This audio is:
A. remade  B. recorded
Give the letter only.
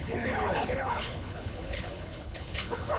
A